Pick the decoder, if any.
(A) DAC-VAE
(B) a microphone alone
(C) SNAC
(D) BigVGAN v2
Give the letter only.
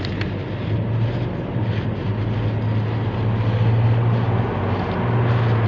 B